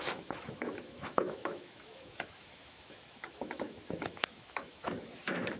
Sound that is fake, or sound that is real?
fake